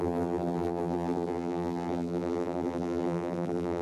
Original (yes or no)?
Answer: no